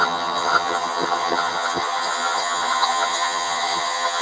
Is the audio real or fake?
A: fake